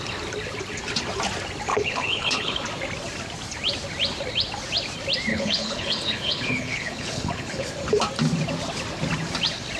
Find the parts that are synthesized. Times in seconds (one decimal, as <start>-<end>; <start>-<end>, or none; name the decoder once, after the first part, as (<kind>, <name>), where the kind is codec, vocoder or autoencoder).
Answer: 1.7-2.6 (codec, HILCodec); 5.3-7.7